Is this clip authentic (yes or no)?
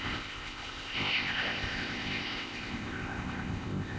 no